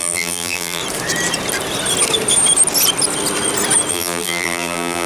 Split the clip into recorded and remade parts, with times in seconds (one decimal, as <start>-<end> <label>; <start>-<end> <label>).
0.0-0.8 remade; 0.8-3.9 recorded; 3.9-5.1 remade

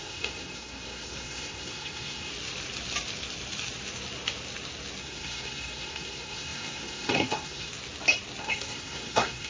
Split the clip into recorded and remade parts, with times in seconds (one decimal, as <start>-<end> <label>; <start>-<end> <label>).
0.0-2.3 remade; 2.3-5.0 recorded; 5.0-7.7 remade; 7.7-8.4 recorded; 8.4-9.5 remade

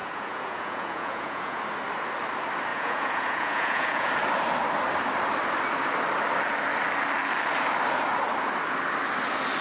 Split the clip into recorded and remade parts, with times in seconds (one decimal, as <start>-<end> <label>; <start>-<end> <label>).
0.0-1.6 remade; 1.6-2.7 recorded; 2.7-4.1 remade; 4.1-9.6 recorded